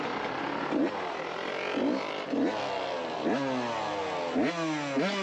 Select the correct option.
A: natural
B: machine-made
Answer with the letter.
A